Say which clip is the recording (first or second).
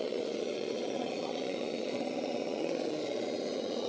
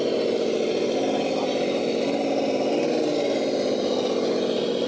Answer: second